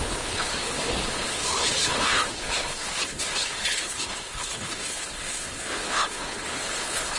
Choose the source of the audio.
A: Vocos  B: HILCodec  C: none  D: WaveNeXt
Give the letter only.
B